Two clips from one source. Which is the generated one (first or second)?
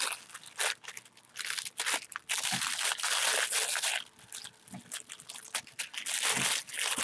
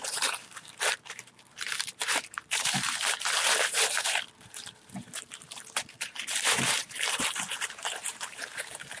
second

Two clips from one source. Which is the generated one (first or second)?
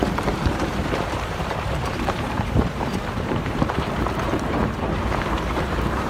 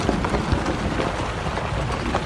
first